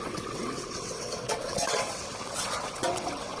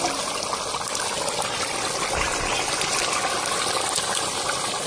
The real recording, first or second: second